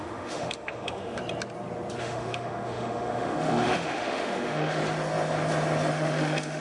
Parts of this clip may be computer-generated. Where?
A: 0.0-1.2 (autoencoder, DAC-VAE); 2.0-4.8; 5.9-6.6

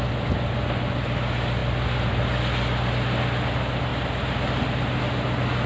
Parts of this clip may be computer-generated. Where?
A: none

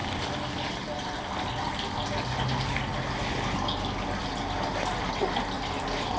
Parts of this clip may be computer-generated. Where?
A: none

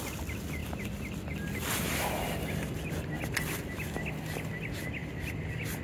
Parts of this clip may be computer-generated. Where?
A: none

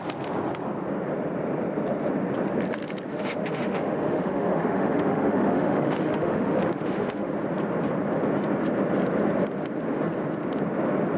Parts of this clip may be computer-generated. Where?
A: 3.1-7.3 (autoencoder, DAC-VAE)

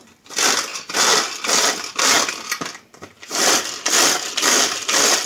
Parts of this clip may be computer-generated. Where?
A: none